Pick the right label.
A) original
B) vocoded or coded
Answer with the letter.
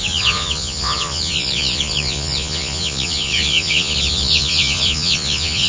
B